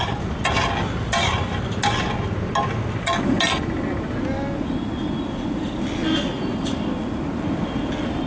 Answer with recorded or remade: recorded